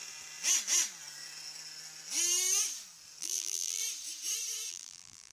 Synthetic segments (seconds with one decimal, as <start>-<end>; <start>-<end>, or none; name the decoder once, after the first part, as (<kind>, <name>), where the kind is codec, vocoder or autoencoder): 3.2-3.8 (vocoder, BigVGAN v2); 4.7-5.3